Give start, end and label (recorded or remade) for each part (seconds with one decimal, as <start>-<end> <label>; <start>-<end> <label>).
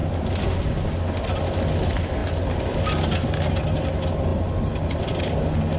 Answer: 0.0-5.8 recorded